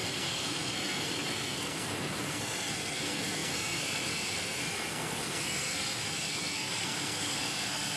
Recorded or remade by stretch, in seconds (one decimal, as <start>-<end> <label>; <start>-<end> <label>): 0.0-8.0 remade